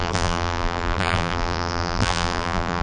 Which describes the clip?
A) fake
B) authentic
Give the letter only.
A